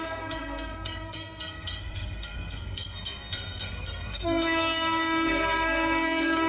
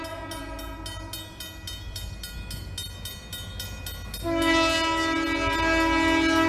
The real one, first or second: second